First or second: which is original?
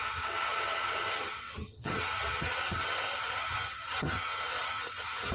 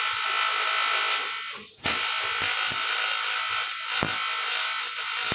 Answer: second